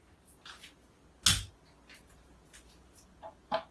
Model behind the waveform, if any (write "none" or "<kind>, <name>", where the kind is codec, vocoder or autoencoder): none